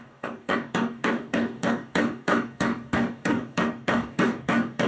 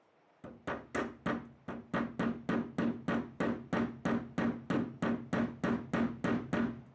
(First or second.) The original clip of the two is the second